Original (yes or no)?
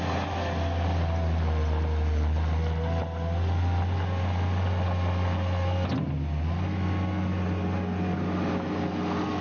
yes